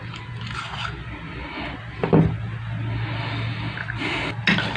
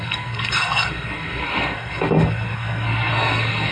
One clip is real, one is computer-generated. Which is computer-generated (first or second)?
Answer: second